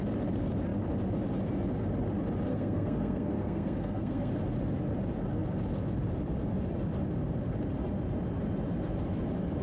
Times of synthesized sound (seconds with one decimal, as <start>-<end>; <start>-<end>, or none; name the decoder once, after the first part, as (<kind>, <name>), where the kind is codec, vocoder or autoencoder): 2.5-4.3 (codec, SNAC)